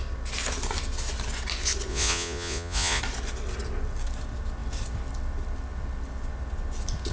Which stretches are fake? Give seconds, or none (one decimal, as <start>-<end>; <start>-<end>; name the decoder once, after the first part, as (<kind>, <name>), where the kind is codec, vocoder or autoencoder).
1.9-3.0 (vocoder, Vocos)